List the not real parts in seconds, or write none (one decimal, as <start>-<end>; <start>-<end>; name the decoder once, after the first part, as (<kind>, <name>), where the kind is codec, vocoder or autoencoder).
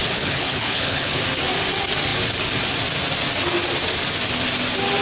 0.0-1.2 (codec, HILCodec)